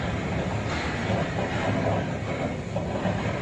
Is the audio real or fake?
real